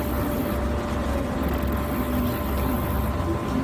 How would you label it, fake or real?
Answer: real